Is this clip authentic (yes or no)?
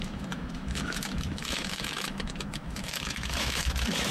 no